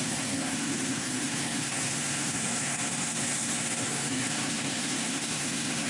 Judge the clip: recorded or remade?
remade